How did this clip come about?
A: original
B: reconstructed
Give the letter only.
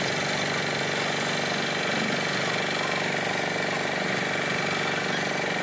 A